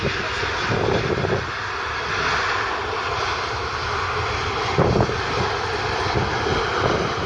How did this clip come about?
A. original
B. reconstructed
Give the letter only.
A